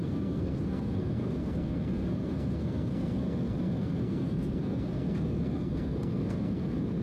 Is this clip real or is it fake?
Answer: fake